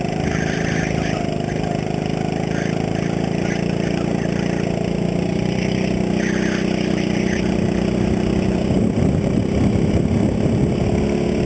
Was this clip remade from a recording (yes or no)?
no